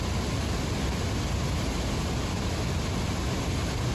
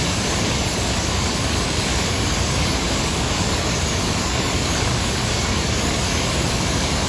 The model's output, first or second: second